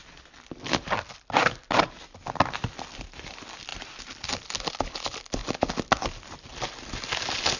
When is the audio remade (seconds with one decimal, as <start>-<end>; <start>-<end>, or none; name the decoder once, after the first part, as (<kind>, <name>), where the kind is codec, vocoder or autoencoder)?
2.6-6.5 (vocoder, BigVGAN v2); 7.0-7.6

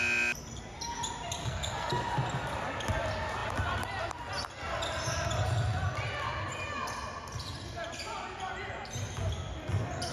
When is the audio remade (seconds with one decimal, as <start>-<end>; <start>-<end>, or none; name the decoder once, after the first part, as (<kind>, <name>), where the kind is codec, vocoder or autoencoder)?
1.4-1.9 (codec, SNAC)